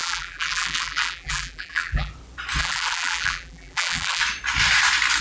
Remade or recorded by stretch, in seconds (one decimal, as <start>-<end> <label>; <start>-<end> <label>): 0.0-2.1 remade; 2.1-2.6 recorded; 2.6-4.2 remade; 4.2-5.2 recorded